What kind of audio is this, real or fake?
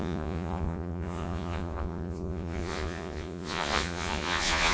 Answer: fake